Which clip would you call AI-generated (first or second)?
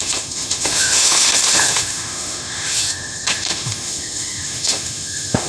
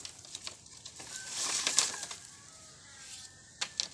first